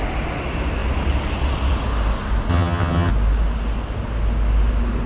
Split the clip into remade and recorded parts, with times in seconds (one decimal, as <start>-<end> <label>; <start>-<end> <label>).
0.0-2.5 recorded; 2.5-3.1 remade; 3.1-5.1 recorded